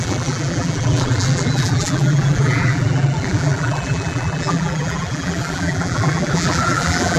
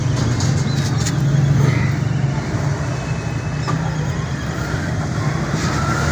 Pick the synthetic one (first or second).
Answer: first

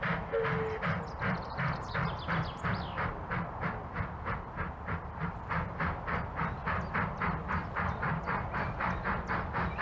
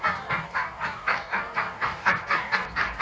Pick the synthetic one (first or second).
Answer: second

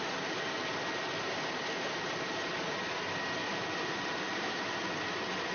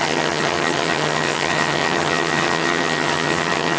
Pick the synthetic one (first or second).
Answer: second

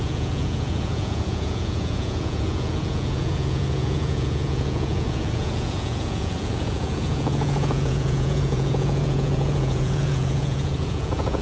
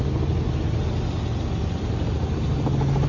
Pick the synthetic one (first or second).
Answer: first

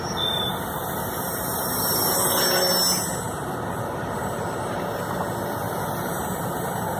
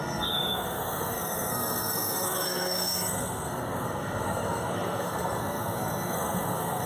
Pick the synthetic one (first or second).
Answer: second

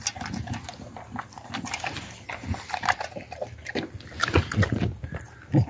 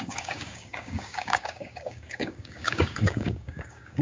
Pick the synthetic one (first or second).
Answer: second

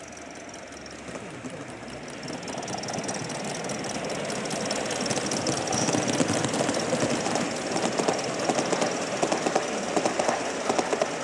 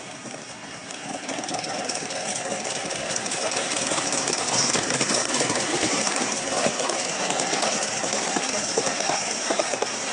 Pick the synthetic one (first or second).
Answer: second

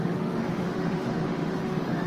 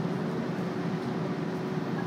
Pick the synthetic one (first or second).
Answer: first